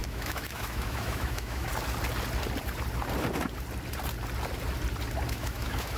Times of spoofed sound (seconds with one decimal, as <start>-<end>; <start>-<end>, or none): 0.0-1.7; 5.3-6.0